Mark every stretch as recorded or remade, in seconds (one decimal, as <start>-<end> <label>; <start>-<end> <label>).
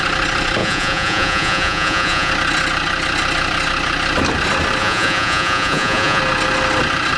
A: 0.0-0.6 recorded; 0.6-2.3 remade; 2.3-4.8 recorded; 4.8-6.2 remade; 6.2-7.2 recorded